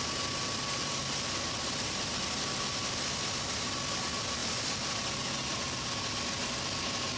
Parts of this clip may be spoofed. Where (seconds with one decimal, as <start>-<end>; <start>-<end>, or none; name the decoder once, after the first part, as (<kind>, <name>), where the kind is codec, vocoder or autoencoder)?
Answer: 0.8-2.2 (vocoder, BigVGAN v2)